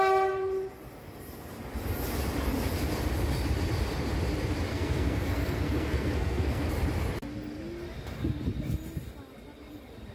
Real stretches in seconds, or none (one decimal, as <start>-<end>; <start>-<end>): 0.0-4.7; 6.7-10.1